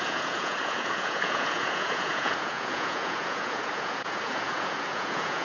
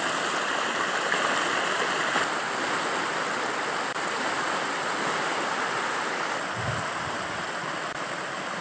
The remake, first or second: first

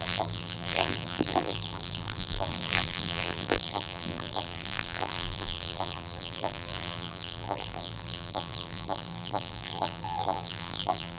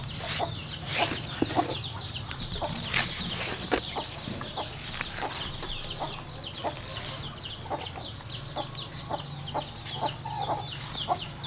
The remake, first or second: first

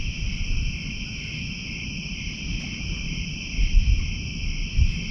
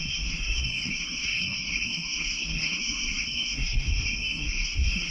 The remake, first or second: second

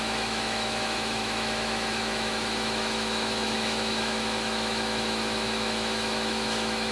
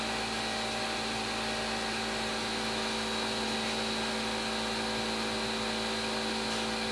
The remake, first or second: first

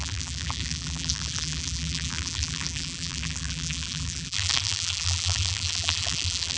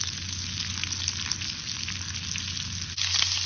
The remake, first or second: first